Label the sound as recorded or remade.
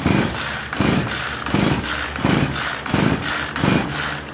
recorded